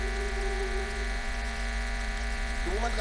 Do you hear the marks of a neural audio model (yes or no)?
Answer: yes